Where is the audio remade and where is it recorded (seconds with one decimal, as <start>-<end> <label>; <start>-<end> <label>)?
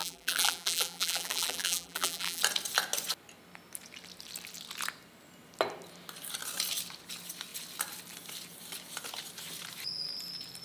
0.0-2.4 remade; 2.4-10.6 recorded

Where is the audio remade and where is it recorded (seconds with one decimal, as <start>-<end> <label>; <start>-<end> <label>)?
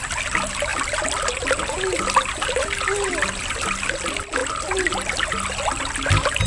0.0-6.5 recorded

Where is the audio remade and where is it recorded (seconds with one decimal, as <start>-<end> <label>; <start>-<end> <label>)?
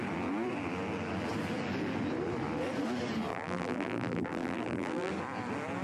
0.0-3.3 recorded; 3.3-5.1 remade; 5.1-5.8 recorded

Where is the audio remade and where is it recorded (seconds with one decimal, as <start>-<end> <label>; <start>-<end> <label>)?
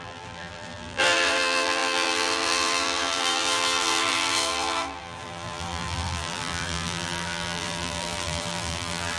0.0-9.2 remade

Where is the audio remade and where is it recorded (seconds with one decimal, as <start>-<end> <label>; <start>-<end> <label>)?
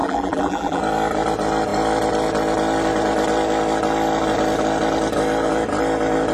0.0-0.8 remade; 0.8-6.3 recorded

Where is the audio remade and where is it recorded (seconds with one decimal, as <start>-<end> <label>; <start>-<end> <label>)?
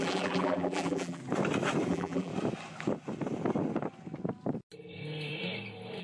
0.0-1.2 remade; 1.2-1.9 recorded; 1.9-2.3 remade; 2.3-6.0 recorded